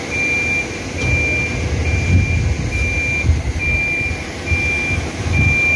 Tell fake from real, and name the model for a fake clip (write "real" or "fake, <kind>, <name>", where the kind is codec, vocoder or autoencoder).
real